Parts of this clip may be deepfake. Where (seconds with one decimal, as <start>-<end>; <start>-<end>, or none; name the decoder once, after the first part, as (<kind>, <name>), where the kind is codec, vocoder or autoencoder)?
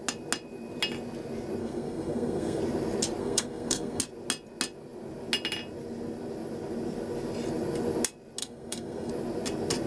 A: 1.6-2.6 (codec, SNAC); 3.2-4.0; 8.4-9.1